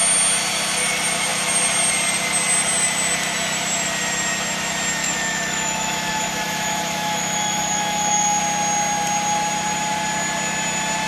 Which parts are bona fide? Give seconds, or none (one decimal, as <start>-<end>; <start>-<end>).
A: 0.0-5.0; 8.4-11.1